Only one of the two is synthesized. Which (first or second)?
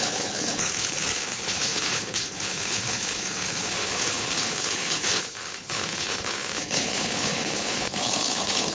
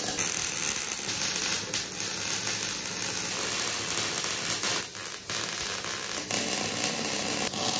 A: first